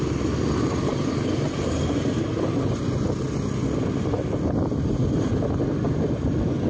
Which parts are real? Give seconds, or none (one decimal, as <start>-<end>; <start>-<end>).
0.0-6.7